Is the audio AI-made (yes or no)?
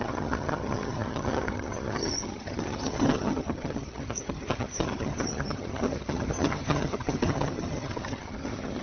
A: yes